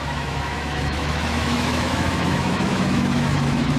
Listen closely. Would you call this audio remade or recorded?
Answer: remade